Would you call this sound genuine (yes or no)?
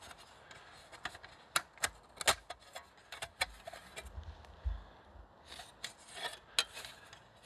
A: yes